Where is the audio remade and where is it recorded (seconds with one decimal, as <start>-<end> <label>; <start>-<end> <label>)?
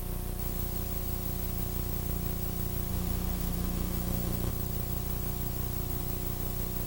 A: 0.0-2.9 recorded; 2.9-4.5 remade; 4.5-6.9 recorded